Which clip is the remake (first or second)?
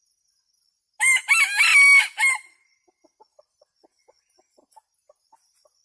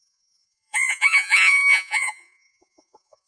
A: second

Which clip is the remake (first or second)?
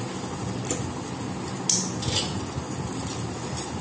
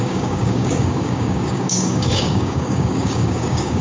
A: second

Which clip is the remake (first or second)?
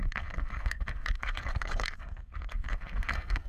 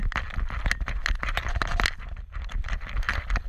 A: first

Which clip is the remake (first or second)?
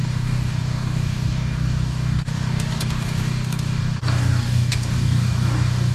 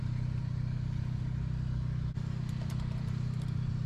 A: first